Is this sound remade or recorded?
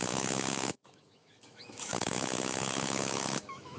remade